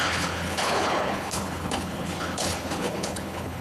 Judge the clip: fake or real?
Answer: fake